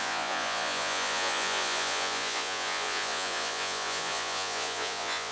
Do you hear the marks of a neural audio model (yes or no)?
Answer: yes